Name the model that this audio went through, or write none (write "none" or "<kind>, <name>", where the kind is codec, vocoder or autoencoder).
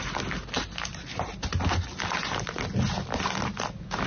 none